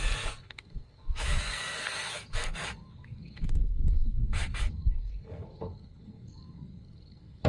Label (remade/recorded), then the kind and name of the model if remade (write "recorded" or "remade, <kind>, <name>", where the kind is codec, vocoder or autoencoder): remade, codec, SNAC